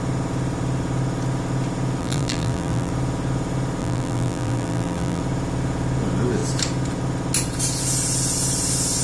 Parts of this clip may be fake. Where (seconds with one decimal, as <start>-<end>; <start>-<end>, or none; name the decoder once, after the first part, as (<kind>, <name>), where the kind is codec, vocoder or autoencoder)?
2.0-2.9 (vocoder, BigVGAN v2); 3.8-5.2